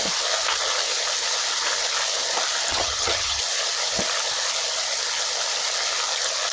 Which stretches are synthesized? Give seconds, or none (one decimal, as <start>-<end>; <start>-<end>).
2.7-3.4